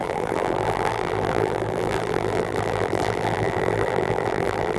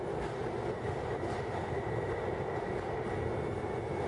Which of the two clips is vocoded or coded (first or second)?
first